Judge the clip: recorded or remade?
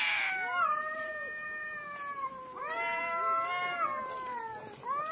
remade